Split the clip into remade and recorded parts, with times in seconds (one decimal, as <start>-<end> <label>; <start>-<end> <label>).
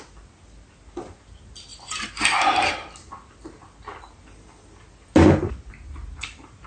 0.0-6.7 recorded